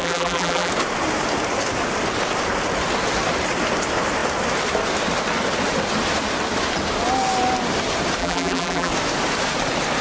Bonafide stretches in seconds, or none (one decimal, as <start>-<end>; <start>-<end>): 0.7-8.2; 8.9-10.0